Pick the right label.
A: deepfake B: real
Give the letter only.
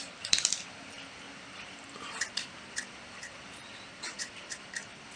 A